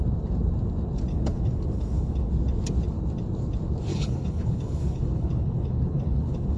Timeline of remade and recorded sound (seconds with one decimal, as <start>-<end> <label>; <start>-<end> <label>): 0.0-1.1 recorded; 1.1-2.3 remade; 2.3-3.9 recorded; 3.9-6.6 remade